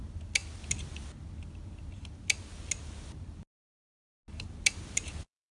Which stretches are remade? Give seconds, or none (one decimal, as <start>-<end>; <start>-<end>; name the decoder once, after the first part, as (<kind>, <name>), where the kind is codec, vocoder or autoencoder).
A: none